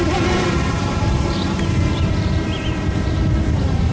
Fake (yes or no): yes